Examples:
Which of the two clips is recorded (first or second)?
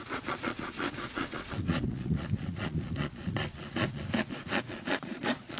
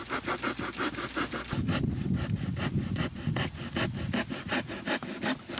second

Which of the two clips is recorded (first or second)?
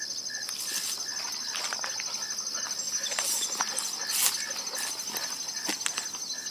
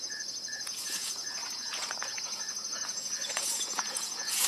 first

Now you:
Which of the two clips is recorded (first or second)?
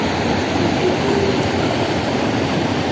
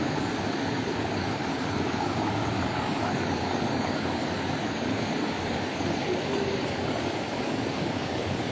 first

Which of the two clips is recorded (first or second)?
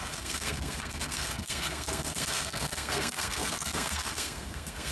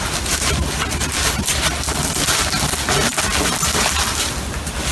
second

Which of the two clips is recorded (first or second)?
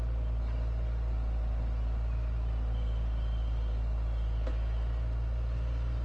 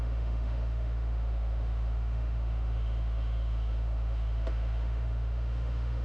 first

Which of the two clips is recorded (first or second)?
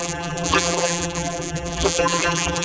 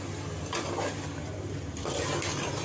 second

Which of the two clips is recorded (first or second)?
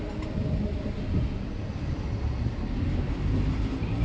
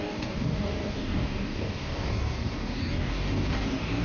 first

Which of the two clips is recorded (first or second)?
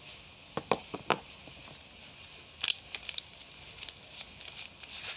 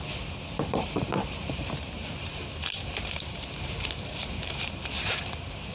first